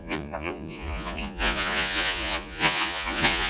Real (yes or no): no